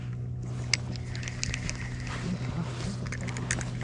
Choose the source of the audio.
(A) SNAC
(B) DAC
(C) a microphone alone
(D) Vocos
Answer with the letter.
C